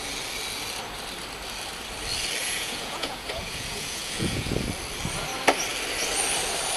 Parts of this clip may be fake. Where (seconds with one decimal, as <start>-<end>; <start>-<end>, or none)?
2.4-4.5